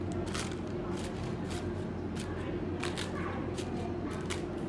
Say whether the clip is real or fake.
real